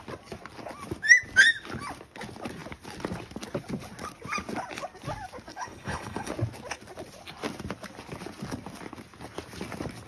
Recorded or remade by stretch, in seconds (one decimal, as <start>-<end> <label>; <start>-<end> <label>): 0.0-5.5 recorded; 5.5-6.3 remade; 6.3-10.1 recorded